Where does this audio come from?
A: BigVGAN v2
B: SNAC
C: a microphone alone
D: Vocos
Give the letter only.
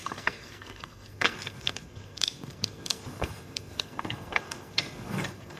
B